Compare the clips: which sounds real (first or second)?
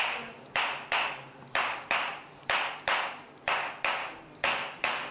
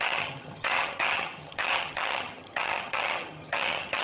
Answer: first